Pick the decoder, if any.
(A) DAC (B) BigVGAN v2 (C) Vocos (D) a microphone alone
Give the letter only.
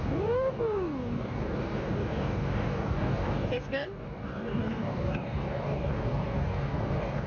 A